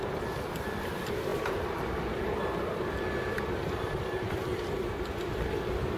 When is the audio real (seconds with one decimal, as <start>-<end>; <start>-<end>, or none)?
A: 0.0-6.0